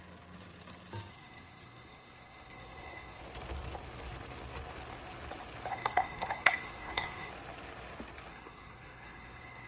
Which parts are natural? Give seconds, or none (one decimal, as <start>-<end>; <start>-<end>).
0.0-1.1; 3.2-5.7; 7.3-8.3